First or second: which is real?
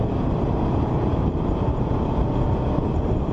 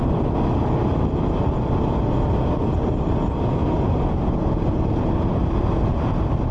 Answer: second